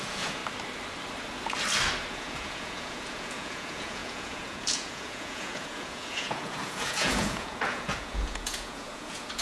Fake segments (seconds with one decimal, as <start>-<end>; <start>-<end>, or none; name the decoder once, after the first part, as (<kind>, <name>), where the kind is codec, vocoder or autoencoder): 0.0-0.4 (vocoder, Vocos); 2.1-9.4